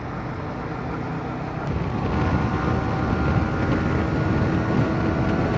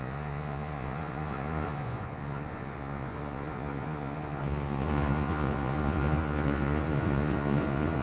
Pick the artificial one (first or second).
second